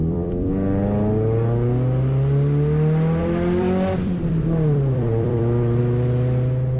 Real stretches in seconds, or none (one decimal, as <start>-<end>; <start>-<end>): 0.5-3.2; 5.8-6.8